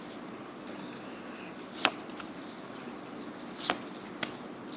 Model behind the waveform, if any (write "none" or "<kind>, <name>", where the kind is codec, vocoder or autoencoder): none